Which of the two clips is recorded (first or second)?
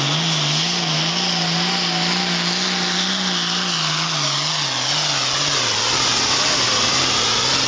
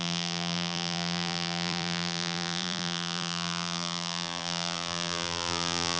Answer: first